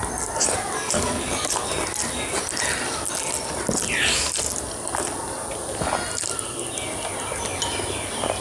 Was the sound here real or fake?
real